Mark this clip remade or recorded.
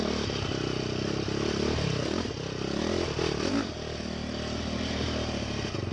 recorded